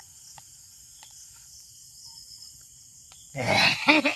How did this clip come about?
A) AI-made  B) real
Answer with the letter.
A